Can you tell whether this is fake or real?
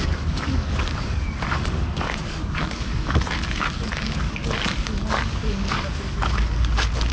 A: fake